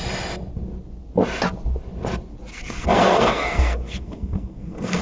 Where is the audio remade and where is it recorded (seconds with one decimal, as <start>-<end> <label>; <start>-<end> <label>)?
0.0-2.5 recorded; 2.5-5.0 remade